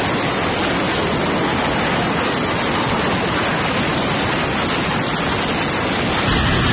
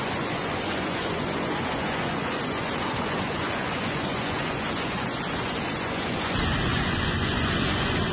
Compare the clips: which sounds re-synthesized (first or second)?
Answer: second